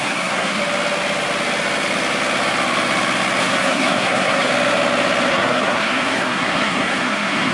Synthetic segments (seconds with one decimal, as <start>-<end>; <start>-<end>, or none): 0.0-0.6; 3.4-4.5; 5.3-7.5